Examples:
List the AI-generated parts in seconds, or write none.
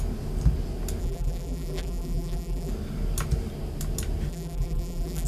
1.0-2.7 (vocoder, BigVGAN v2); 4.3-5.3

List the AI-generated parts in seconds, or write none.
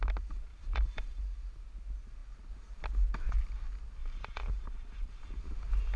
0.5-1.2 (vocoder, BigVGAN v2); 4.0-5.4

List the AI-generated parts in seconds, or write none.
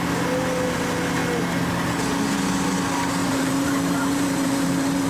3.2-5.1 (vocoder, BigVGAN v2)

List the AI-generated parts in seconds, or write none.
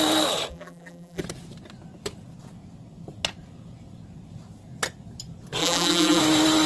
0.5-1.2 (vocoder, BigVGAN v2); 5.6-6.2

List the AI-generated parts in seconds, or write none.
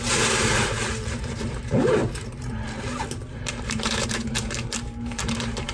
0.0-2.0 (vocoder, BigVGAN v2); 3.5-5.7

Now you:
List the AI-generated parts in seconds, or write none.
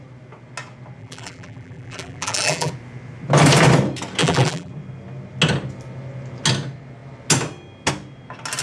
1.0-2.7 (vocoder, BigVGAN v2); 4.2-4.7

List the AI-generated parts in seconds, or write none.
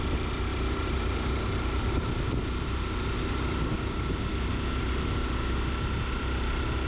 0.5-2.0 (vocoder, BigVGAN v2)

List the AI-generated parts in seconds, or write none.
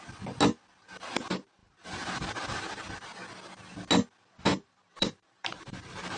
1.6-2.9 (vocoder, BigVGAN v2); 4.5-6.2